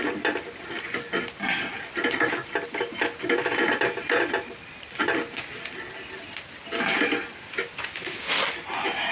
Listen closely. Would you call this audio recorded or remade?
recorded